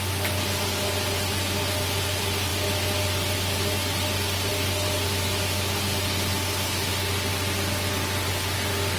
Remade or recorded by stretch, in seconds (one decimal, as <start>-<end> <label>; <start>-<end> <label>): 0.0-9.0 recorded

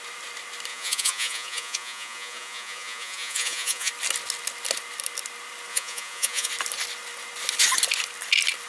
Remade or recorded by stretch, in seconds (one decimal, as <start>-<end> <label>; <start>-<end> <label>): 0.0-0.7 recorded; 0.7-3.9 remade; 3.9-5.7 recorded; 5.7-6.5 remade; 6.5-8.7 recorded

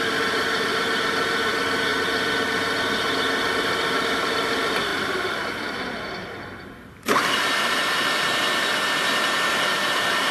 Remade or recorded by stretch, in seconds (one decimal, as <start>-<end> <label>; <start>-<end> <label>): 0.0-1.9 remade; 1.9-3.4 recorded; 3.4-10.3 remade

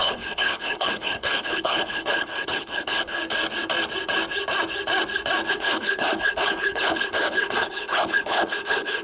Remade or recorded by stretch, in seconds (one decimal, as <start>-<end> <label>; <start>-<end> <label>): 0.0-3.2 remade; 3.2-5.5 recorded; 5.5-9.0 remade

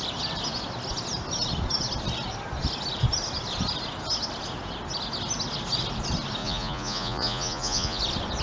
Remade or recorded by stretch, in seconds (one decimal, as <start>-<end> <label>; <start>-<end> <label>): 0.0-6.4 recorded; 6.4-8.0 remade; 8.0-8.4 recorded

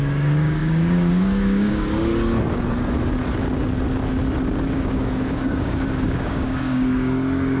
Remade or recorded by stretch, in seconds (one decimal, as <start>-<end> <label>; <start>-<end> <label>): 0.0-2.1 remade; 2.1-4.6 recorded; 4.6-7.6 remade